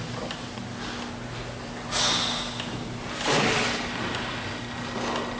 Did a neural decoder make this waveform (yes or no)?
no